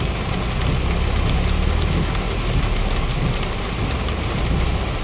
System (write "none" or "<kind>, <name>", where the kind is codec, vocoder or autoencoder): none